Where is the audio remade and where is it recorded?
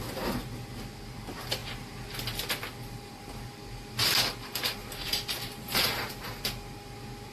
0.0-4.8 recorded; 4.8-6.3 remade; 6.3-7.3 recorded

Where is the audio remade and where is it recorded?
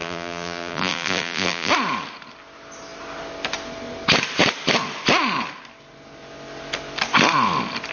0.0-1.7 remade; 1.7-7.9 recorded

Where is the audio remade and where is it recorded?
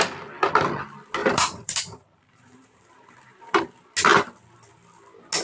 0.0-1.2 recorded; 1.2-3.6 remade; 3.6-5.4 recorded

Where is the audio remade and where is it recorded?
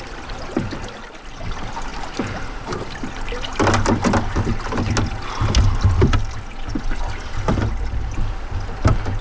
0.0-9.2 recorded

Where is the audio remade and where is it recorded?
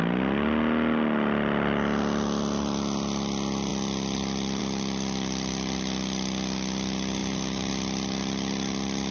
0.0-7.2 recorded; 7.2-7.7 remade; 7.7-9.1 recorded